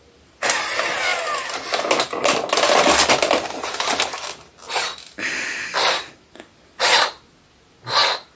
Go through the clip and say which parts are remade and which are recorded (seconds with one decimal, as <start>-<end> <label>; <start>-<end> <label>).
0.0-8.4 recorded